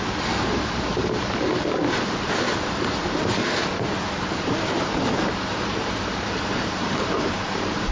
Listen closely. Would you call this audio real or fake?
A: fake